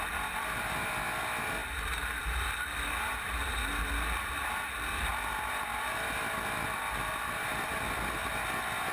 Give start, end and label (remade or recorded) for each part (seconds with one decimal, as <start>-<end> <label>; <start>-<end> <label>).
0.0-5.1 recorded; 5.1-7.1 remade; 7.1-7.5 recorded; 7.5-8.4 remade; 8.4-8.9 recorded